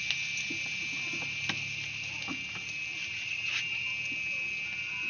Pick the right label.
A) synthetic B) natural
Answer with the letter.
B